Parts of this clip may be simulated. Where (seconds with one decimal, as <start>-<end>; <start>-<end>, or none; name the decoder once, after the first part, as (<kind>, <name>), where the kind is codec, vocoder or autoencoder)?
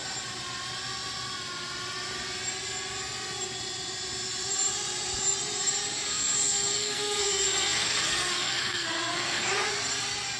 6.1-9.5 (codec, SNAC)